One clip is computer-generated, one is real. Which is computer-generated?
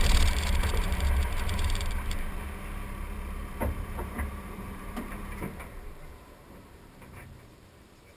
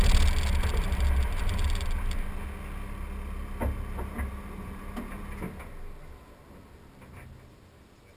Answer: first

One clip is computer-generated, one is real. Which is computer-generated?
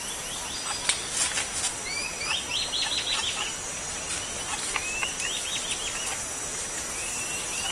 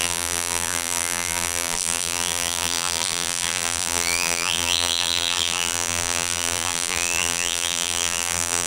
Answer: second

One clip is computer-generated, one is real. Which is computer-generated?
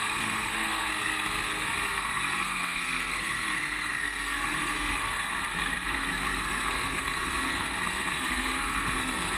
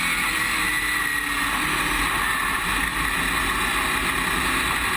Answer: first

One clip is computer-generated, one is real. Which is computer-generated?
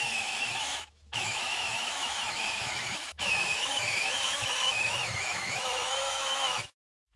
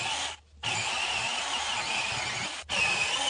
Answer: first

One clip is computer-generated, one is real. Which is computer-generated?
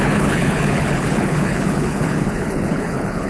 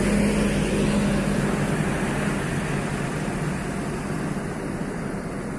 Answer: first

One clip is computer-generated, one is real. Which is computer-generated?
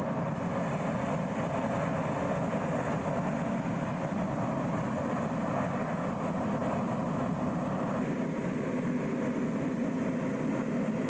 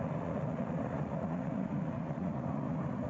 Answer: second